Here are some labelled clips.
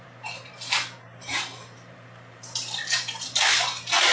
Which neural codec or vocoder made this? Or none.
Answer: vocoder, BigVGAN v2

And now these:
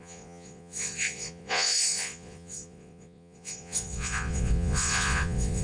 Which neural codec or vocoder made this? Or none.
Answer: vocoder, Vocos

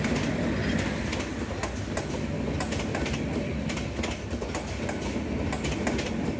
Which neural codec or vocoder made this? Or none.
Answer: none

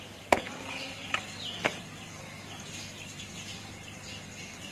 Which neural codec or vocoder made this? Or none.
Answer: codec, DAC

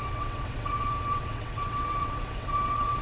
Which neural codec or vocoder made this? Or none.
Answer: vocoder, WaveNeXt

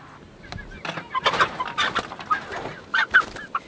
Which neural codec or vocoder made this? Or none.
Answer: none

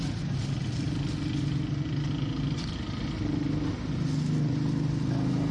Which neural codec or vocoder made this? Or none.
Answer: none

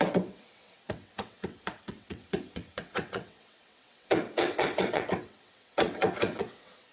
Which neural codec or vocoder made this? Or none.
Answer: vocoder, WaveNeXt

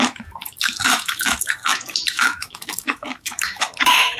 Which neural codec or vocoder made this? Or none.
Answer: autoencoder, DAC-VAE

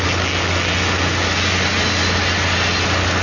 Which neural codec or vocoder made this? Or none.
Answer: none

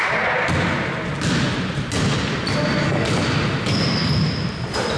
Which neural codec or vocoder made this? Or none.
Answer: none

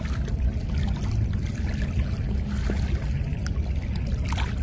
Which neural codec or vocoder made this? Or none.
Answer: none